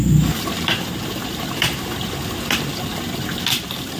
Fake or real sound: real